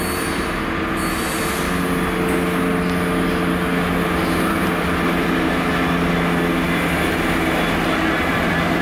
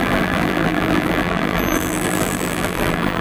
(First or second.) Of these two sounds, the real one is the first